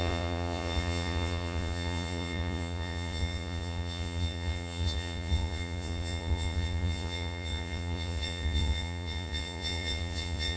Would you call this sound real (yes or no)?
no